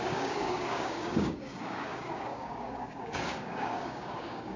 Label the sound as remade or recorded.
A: remade